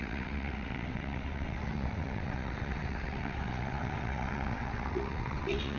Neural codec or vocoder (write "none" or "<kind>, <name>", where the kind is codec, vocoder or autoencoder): vocoder, WaveNeXt